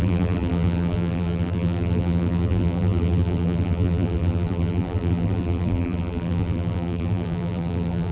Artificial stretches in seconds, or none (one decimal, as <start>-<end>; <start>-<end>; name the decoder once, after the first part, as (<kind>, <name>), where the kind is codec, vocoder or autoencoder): 0.0-8.1 (vocoder, BigVGAN v2)